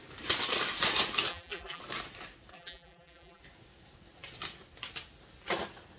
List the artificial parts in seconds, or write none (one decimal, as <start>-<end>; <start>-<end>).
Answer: 1.3-1.8; 2.5-3.4

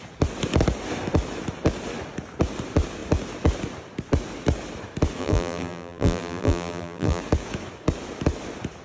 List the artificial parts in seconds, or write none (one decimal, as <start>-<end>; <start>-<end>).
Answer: 5.2-7.2

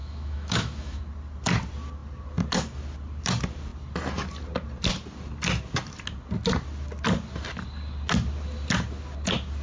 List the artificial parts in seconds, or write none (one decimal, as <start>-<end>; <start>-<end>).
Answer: 0.0-1.0

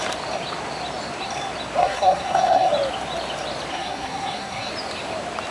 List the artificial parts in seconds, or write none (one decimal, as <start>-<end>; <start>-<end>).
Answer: 1.8-2.7; 3.7-4.7

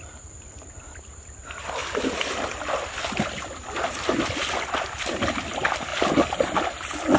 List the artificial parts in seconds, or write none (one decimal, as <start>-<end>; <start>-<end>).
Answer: 0.0-0.8

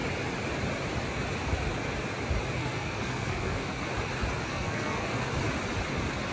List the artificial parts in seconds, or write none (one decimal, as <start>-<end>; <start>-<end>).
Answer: 2.6-3.8; 4.5-5.3

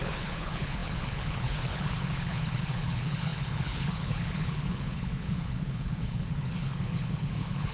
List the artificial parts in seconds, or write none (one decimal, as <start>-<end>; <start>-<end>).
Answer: 0.0-7.7